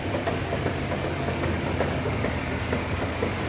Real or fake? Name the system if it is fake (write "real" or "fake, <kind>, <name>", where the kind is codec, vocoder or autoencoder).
fake, codec, DAC